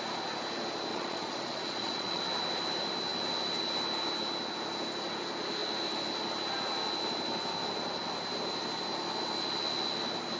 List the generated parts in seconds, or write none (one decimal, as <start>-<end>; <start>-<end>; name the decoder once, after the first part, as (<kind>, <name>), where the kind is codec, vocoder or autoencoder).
0.9-2.2 (vocoder, Vocos)